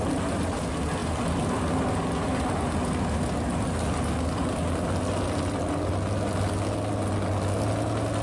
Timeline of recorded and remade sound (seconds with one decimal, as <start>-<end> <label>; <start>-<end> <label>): 0.0-8.2 recorded